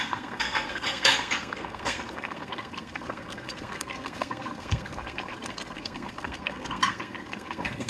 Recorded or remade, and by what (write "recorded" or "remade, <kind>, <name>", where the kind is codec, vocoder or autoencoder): remade, codec, SNAC